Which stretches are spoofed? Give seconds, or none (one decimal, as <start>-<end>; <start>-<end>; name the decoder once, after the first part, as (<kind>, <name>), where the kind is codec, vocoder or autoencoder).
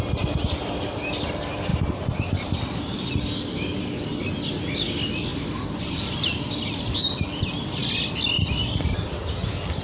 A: 1.7-2.5 (vocoder, BigVGAN v2); 5.3-6.5